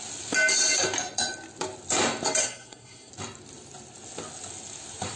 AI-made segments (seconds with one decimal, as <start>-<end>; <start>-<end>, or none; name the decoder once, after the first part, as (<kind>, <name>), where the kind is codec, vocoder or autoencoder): 2.4-3.1 (codec, SNAC)